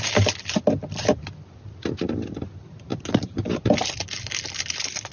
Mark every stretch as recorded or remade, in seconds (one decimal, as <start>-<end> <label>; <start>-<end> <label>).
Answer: 0.0-2.9 recorded; 2.9-5.1 remade